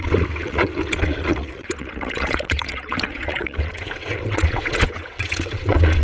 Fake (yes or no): yes